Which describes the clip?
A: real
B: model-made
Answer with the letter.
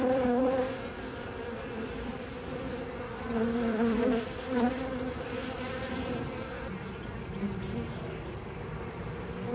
B